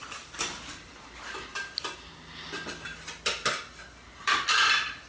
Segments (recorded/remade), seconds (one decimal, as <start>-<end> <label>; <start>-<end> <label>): 0.0-5.1 recorded